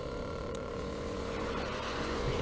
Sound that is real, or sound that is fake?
fake